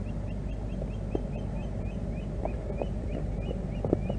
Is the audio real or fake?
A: real